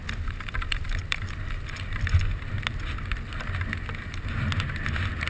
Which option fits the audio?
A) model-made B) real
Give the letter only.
B